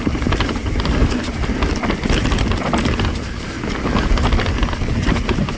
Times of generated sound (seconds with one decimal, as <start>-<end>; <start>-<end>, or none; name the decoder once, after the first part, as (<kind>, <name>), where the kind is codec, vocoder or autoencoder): none